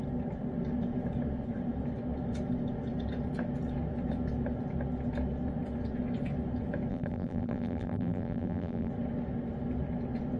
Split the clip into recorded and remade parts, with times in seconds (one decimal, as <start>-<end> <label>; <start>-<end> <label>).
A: 0.0-6.9 recorded; 6.9-8.9 remade; 8.9-10.4 recorded